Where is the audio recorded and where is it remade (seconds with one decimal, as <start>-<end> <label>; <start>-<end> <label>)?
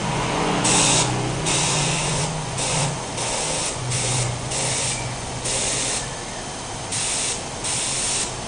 0.0-3.1 remade; 3.1-3.6 recorded; 3.6-5.9 remade; 5.9-8.5 recorded